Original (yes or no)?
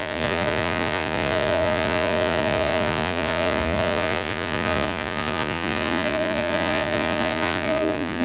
no